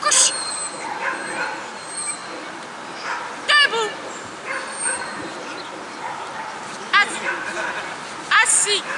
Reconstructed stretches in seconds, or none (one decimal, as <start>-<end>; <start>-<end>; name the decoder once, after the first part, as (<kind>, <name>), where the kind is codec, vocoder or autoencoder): none